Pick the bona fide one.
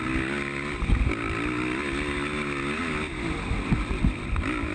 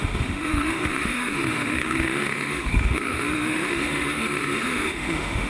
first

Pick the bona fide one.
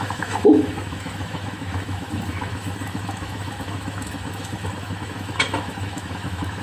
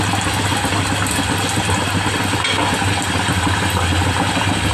second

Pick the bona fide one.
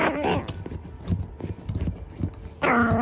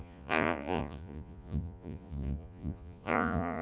first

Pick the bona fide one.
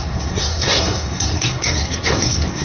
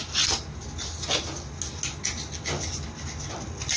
second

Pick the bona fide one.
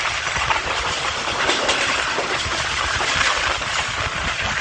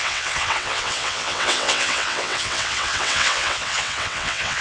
first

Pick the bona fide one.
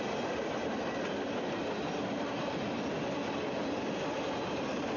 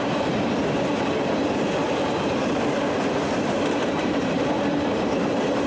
first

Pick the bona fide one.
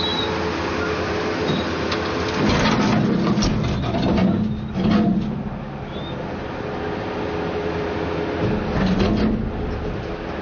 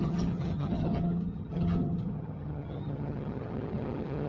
first